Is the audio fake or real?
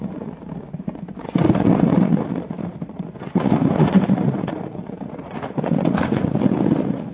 fake